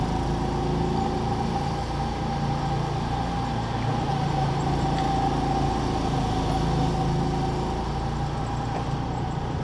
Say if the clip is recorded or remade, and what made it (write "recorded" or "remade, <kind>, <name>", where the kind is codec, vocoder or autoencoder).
recorded